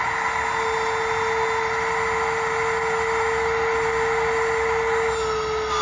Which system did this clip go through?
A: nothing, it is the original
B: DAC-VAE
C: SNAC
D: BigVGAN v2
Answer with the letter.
A